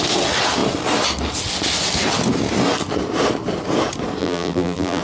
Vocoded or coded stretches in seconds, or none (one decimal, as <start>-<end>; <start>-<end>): 4.2-5.0